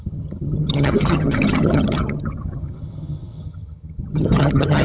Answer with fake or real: fake